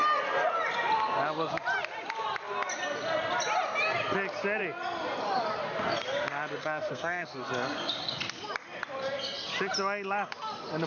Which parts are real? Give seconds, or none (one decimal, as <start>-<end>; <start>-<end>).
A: 0.0-6.6; 7.5-10.9